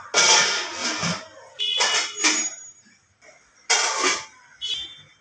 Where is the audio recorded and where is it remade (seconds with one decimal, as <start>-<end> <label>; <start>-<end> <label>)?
0.0-5.2 recorded